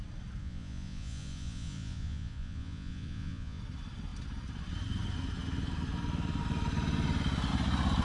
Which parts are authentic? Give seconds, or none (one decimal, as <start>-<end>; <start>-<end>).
0.0-0.4; 3.6-8.0